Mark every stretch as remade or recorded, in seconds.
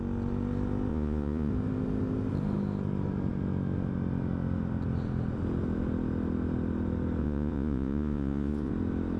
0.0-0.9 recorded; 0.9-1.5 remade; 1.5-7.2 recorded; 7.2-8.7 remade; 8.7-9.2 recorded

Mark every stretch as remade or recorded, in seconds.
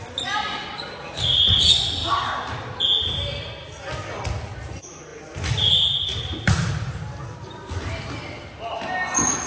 0.0-9.5 recorded